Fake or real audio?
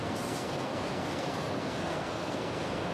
fake